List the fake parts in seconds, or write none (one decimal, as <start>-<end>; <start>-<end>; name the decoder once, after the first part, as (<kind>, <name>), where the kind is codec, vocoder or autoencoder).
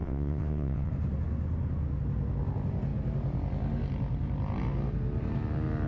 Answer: 0.0-0.9 (vocoder, WaveNeXt)